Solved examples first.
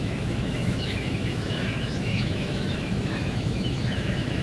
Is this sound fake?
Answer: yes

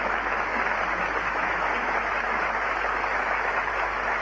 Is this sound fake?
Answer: yes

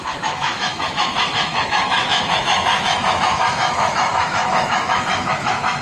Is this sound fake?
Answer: yes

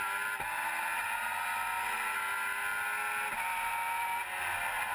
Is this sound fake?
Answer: no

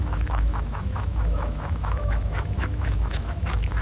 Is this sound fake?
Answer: yes